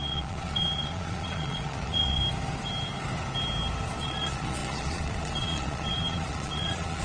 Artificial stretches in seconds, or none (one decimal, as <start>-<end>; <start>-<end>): 0.0-2.2; 4.0-7.0